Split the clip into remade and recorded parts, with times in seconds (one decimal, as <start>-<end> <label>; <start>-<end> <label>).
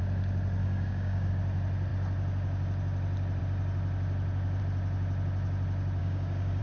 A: 0.0-0.6 recorded; 0.6-1.3 remade; 1.3-6.0 recorded; 6.0-6.6 remade